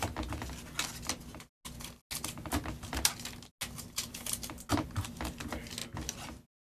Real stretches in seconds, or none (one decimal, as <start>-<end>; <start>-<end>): 0.0-6.6